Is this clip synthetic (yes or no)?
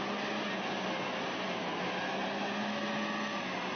no